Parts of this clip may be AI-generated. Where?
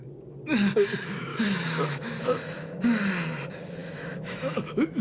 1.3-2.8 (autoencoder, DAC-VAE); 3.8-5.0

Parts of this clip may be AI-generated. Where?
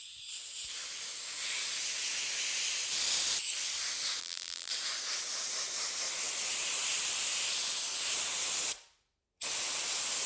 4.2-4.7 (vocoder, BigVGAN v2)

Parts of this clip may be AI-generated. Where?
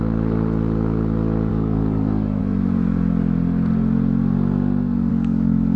1.5-2.4 (codec, DAC); 5.1-5.8